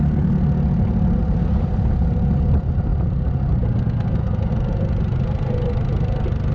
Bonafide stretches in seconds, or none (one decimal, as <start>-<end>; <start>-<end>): 0.0-1.2; 1.9-2.9; 4.5-6.5